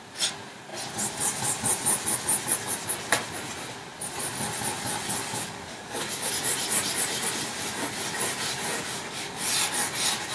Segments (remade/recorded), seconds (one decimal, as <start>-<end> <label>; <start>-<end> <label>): 0.0-5.2 recorded; 5.2-6.3 remade; 6.3-8.7 recorded; 8.7-9.4 remade; 9.4-10.3 recorded